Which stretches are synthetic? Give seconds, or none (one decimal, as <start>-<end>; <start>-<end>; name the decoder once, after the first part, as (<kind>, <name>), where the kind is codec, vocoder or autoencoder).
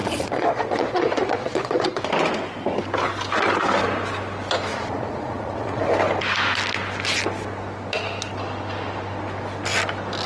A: 0.0-2.0 (vocoder, Vocos); 4.7-5.9